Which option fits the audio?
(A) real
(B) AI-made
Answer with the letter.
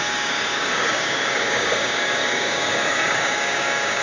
B